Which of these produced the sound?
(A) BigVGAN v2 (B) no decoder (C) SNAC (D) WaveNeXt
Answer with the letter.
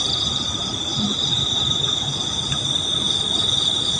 B